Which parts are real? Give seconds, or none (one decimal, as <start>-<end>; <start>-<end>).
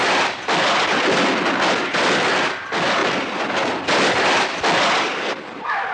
0.0-5.1